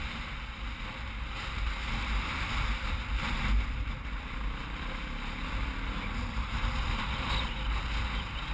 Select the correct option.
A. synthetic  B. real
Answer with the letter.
A